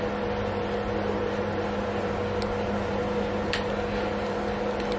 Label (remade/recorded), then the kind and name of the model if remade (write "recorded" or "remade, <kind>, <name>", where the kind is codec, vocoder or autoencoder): recorded